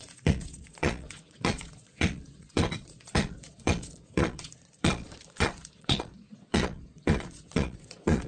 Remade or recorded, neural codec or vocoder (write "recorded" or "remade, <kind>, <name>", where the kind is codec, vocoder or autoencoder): remade, vocoder, Vocos